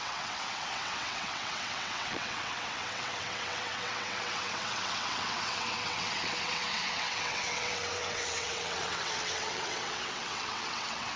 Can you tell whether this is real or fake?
fake